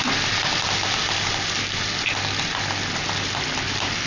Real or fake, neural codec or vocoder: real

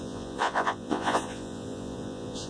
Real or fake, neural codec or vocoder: fake, vocoder, Vocos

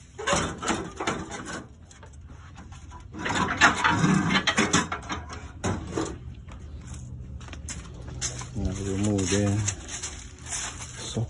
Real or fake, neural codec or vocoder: real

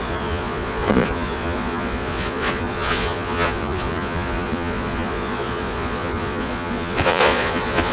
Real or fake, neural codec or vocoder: fake, vocoder, Vocos